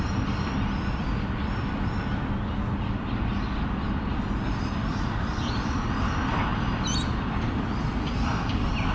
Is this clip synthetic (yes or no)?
no